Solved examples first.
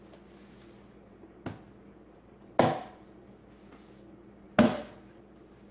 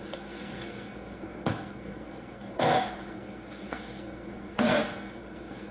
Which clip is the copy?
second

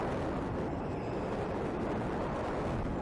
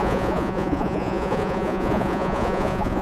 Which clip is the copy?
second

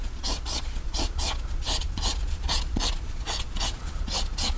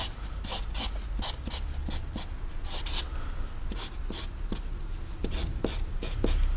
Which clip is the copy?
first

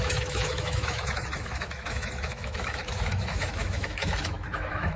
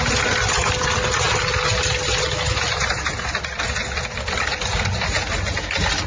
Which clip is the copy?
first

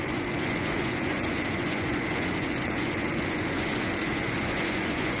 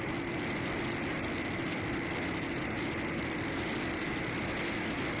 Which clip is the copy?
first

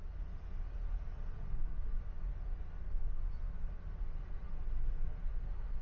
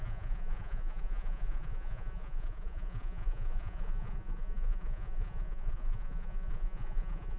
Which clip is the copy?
second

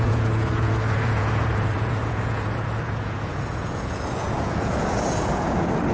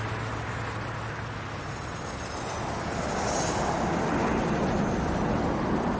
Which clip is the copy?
first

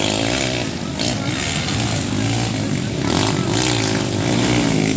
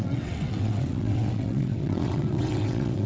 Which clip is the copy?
second